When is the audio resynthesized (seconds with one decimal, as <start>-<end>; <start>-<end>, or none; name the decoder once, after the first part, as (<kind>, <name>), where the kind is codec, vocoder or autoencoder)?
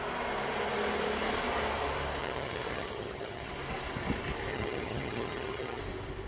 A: 2.2-3.5 (vocoder, HiFi-GAN); 4.5-5.8